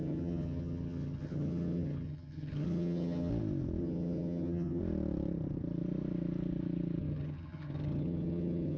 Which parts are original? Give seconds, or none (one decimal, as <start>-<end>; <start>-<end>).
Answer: 3.3-3.8; 4.8-7.0